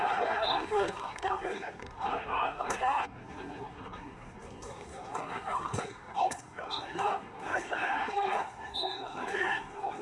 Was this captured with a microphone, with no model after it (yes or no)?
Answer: no